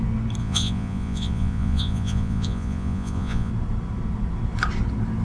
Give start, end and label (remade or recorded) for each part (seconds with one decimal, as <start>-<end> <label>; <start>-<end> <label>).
0.0-0.4 recorded; 0.4-3.5 remade; 3.5-5.2 recorded